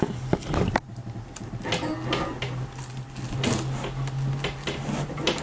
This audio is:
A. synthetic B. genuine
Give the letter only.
B